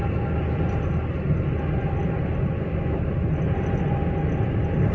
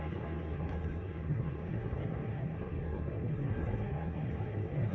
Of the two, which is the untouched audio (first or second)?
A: first